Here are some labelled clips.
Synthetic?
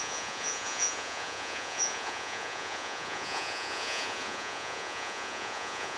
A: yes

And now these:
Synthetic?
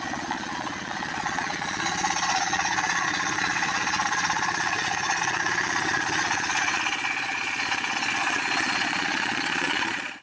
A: yes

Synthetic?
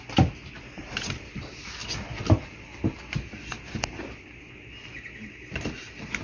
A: no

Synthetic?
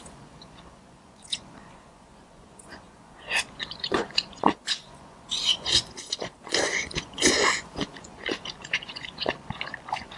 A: yes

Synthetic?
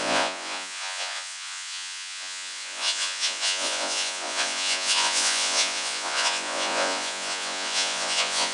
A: yes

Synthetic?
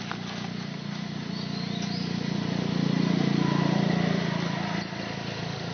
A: no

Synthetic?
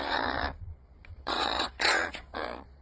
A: yes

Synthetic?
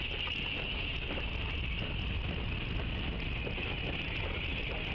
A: no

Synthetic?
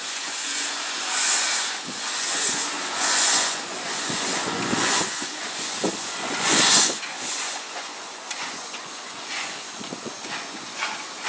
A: yes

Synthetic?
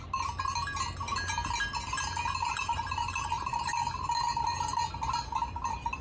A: no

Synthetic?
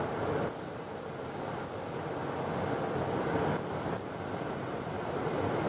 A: no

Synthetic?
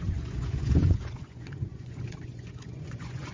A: yes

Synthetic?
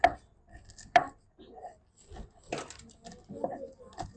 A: no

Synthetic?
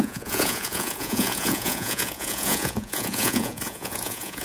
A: yes